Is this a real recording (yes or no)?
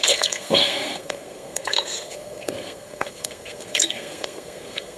no